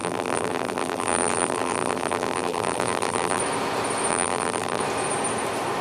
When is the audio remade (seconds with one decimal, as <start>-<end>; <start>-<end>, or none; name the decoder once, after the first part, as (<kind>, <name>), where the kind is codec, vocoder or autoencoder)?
0.0-3.4 (vocoder, BigVGAN v2); 4.1-4.8